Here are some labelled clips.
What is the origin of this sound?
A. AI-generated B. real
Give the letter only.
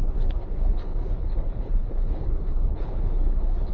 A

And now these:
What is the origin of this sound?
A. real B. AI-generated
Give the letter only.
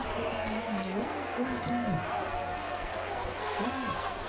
B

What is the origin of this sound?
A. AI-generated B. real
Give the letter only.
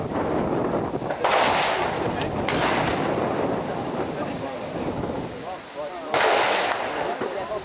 B